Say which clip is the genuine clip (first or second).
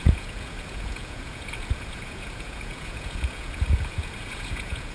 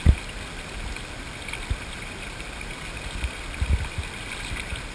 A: second